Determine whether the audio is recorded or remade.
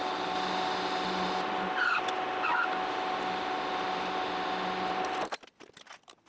recorded